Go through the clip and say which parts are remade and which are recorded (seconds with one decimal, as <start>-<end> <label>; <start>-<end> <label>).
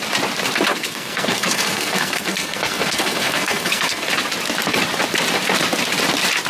0.0-0.7 recorded; 0.7-4.1 remade; 4.1-6.5 recorded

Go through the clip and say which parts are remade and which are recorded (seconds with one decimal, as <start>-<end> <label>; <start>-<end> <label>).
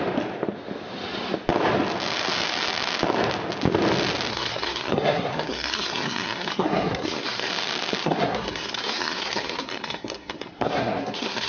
0.0-4.3 recorded; 4.3-7.5 remade; 7.5-8.0 recorded; 8.0-11.5 remade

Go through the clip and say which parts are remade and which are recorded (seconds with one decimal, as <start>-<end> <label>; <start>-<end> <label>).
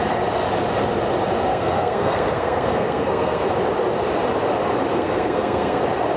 0.0-1.5 recorded; 1.5-3.4 remade; 3.4-4.9 recorded; 4.9-5.8 remade; 5.8-6.2 recorded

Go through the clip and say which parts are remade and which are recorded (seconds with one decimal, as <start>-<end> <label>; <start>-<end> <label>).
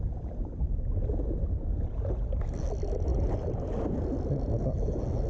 0.0-5.3 recorded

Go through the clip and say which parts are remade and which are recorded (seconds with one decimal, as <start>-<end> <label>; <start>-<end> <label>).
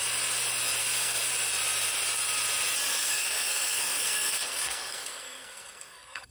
0.0-0.8 recorded; 0.8-1.3 remade; 1.3-2.9 recorded; 2.9-6.3 remade